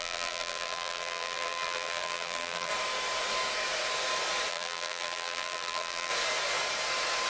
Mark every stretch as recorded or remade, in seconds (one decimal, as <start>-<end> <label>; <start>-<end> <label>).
0.0-2.7 remade; 2.7-4.5 recorded; 4.5-6.1 remade; 6.1-7.3 recorded